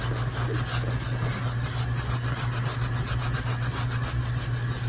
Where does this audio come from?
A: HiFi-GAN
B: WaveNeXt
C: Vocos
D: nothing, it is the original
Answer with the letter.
D